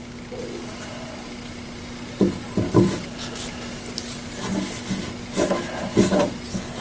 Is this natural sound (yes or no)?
yes